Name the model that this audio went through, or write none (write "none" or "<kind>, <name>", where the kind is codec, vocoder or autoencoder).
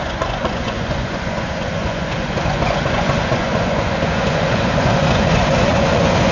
vocoder, Vocos